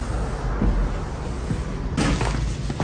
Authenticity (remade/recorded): recorded